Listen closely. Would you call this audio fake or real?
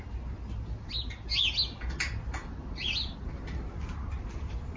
real